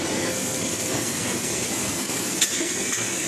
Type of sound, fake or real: fake